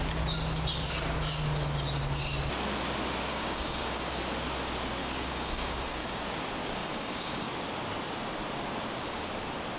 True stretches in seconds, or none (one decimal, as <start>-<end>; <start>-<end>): 0.0-3.3; 4.2-5.0; 6.2-6.8; 7.5-9.8